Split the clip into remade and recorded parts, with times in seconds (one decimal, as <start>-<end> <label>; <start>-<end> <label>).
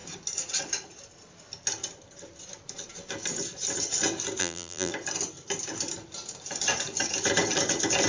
0.0-4.4 recorded; 4.4-4.9 remade; 4.9-8.1 recorded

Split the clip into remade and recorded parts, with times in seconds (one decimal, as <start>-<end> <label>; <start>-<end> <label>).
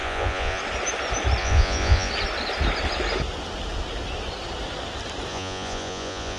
0.0-0.6 remade; 0.6-1.4 recorded; 1.4-2.1 remade; 2.1-5.3 recorded; 5.3-6.4 remade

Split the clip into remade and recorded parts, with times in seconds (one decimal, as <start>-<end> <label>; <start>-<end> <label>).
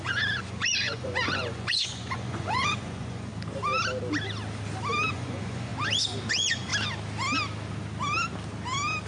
0.0-3.3 remade; 3.3-5.1 recorded; 5.1-5.7 remade; 5.7-6.3 recorded; 6.3-6.7 remade; 6.7-9.1 recorded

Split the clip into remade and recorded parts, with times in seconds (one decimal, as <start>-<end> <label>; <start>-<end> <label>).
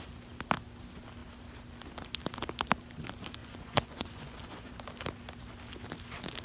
0.0-3.4 recorded; 3.4-4.7 remade; 4.7-6.4 recorded